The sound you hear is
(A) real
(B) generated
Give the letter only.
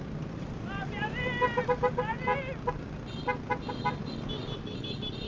A